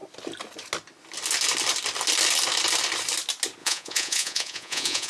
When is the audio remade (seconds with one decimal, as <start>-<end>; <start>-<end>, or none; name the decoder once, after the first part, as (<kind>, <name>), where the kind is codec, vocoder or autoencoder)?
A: 3.6-5.1 (vocoder, Vocos)